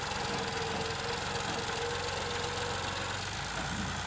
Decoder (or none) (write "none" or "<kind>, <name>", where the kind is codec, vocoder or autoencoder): none